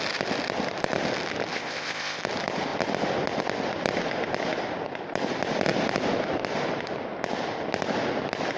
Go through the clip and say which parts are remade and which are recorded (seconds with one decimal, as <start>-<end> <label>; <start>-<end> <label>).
0.0-1.5 recorded; 1.5-2.2 remade; 2.2-8.6 recorded